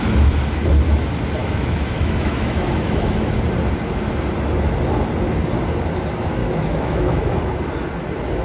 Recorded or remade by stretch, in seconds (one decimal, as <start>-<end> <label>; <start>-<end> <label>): 0.0-1.4 recorded; 1.4-3.3 remade; 3.3-6.4 recorded; 6.4-7.5 remade; 7.5-8.4 recorded

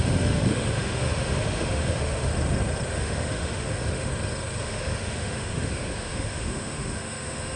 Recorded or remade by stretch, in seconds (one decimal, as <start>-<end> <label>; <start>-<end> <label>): 0.0-2.3 remade; 2.3-2.9 recorded; 2.9-4.1 remade; 4.1-4.6 recorded; 4.6-7.6 remade

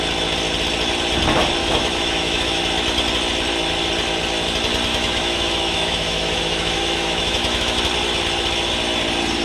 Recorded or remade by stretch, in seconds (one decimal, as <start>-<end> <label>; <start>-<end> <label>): 0.0-1.6 recorded; 1.6-2.6 remade; 2.6-4.9 recorded; 4.9-7.8 remade; 7.8-9.4 recorded

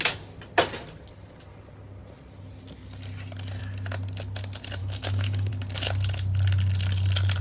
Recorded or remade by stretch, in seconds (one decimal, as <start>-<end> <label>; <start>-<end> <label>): 0.0-4.8 recorded; 4.8-5.5 remade; 5.5-7.4 recorded

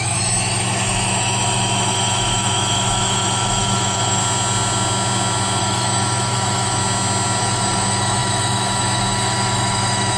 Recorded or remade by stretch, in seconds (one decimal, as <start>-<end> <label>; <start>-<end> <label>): 0.0-4.2 remade; 4.2-5.6 recorded; 5.6-6.8 remade; 6.8-7.4 recorded; 7.4-10.2 remade